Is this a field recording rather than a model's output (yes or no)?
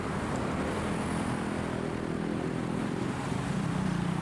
no